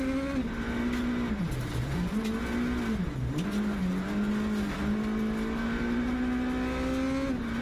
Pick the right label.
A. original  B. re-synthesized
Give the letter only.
A